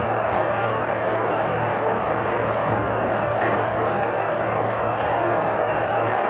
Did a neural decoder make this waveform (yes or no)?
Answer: yes